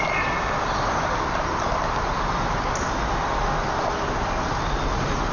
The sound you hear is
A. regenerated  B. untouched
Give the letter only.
B